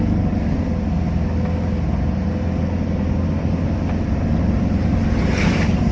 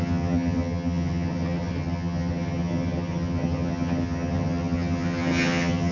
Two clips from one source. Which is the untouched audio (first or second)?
first